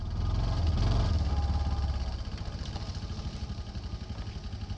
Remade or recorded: recorded